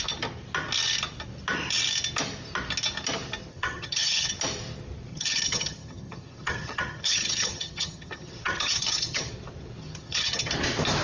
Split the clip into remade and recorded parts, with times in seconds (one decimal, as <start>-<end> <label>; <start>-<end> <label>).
0.0-3.5 recorded; 3.5-4.3 remade; 4.3-5.1 recorded; 5.1-9.3 remade; 9.3-9.8 recorded; 9.8-10.5 remade; 10.5-11.0 recorded